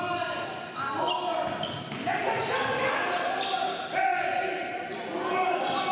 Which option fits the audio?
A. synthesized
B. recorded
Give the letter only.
B